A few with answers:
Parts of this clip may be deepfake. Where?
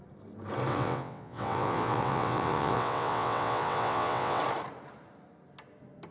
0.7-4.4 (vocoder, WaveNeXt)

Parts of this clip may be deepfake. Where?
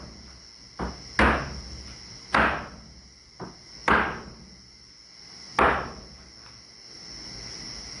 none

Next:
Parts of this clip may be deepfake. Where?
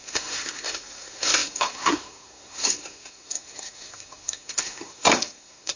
0.0-5.8 (codec, SNAC)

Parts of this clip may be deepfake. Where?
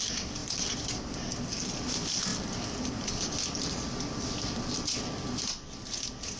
none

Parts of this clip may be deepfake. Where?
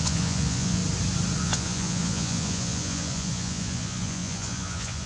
0.0-0.8 (vocoder, Vocos); 1.4-5.1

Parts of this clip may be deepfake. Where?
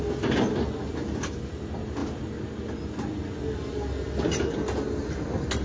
none